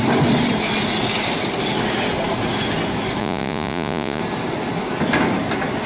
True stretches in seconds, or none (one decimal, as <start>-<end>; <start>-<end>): 0.0-3.2; 4.2-5.9